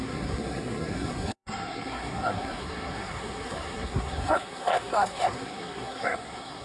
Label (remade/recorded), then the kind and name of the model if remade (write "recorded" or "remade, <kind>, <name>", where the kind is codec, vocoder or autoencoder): remade, codec, SNAC